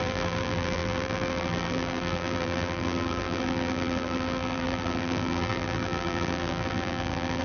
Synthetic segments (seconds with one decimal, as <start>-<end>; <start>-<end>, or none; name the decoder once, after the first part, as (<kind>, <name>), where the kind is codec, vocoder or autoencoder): 0.0-7.4 (vocoder, BigVGAN v2)